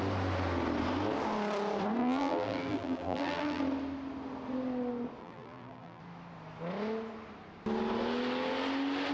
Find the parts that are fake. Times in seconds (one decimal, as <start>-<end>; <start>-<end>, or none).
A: 2.0-3.6; 5.2-6.0